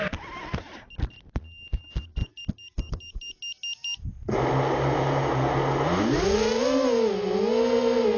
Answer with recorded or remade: recorded